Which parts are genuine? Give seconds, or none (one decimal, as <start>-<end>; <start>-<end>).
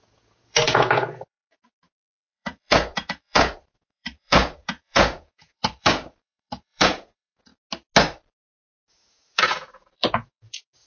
7.5-8.9